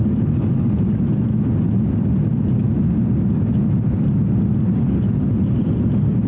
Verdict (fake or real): real